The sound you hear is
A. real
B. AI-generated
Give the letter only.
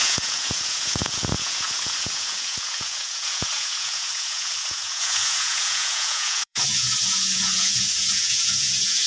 B